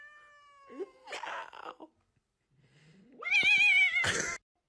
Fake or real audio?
real